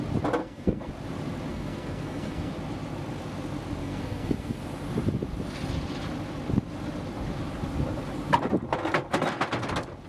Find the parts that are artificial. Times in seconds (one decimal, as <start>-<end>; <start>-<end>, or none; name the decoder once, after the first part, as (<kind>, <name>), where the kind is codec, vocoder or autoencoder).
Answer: 0.4-0.9 (codec, SNAC); 1.5-2.5; 3.8-4.6